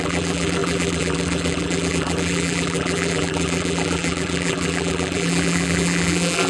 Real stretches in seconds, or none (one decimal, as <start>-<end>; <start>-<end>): none